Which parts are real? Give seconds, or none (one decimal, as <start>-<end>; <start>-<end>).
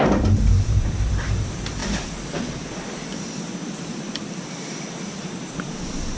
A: none